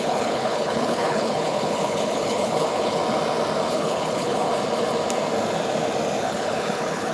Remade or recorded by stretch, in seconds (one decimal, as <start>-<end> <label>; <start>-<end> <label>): 0.0-3.0 remade; 3.0-3.7 recorded; 3.7-4.5 remade; 4.5-6.2 recorded; 6.2-7.1 remade